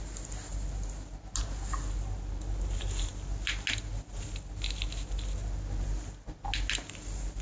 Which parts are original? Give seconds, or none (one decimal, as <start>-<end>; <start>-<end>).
0.0-7.4

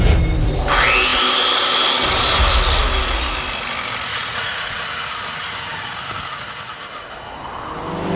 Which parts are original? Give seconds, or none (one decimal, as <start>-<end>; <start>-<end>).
0.0-4.1; 4.8-8.2

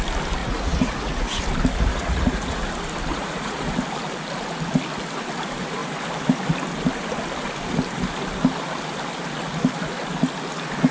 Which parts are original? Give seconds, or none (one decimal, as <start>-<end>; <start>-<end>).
0.0-0.4; 1.4-1.9; 2.7-3.1; 3.7-10.9

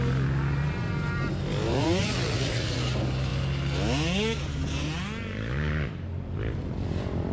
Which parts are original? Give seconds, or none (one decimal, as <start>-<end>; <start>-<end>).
0.0-1.7; 2.8-7.3